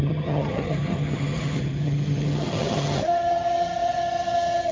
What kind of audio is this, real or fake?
fake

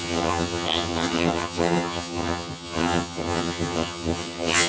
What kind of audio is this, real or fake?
fake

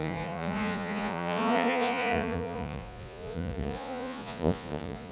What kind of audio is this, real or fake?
fake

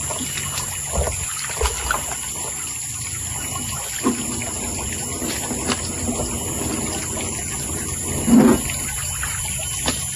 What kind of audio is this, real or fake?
real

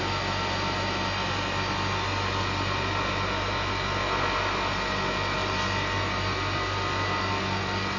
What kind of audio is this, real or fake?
real